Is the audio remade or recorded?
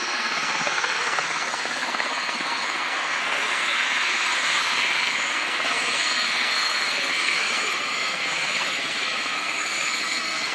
remade